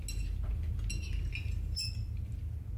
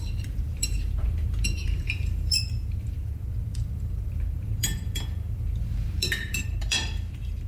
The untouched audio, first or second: first